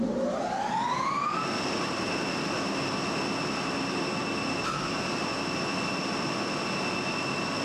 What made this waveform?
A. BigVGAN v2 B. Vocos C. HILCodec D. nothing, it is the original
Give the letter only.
D